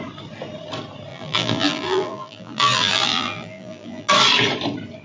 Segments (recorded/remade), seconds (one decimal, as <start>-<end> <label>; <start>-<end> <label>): 0.0-1.1 recorded; 1.1-4.1 remade; 4.1-5.0 recorded